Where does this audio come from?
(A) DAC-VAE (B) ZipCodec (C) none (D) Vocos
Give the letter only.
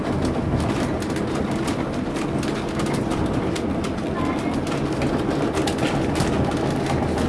C